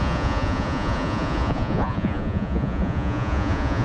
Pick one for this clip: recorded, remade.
remade